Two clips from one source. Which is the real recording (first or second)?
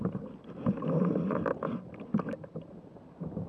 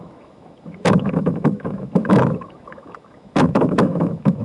first